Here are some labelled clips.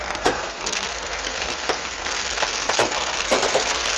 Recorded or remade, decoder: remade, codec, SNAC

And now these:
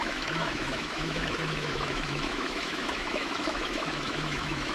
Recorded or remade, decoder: remade, autoencoder, DAC-VAE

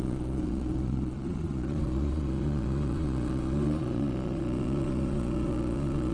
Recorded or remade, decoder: remade, vocoder, Vocos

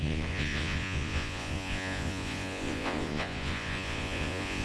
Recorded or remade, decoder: remade, vocoder, Vocos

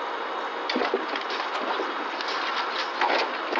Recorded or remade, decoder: recorded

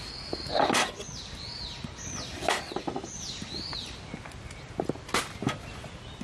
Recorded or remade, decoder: recorded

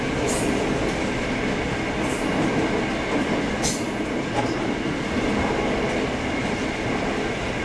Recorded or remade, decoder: recorded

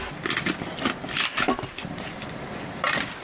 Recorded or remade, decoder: recorded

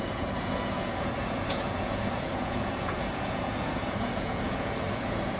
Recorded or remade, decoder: remade, vocoder, Vocos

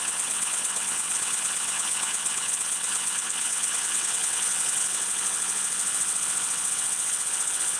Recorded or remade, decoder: remade, vocoder, WaveNeXt